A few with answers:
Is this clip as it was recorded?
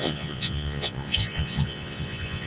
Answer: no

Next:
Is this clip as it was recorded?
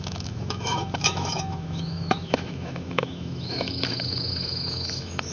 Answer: no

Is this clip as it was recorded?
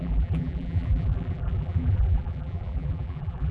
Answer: no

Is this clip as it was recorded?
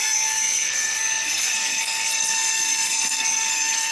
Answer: no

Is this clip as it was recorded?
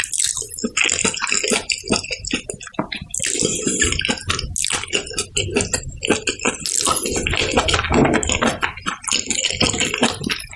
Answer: yes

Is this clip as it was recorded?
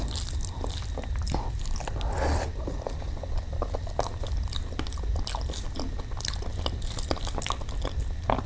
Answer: yes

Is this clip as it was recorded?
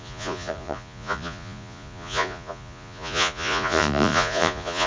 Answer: no